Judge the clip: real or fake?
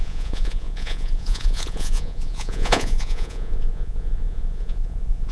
fake